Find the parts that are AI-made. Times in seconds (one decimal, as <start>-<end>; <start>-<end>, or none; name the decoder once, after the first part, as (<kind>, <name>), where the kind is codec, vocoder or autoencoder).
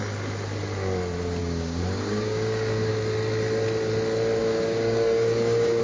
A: 1.4-2.9 (codec, DAC); 4.4-5.8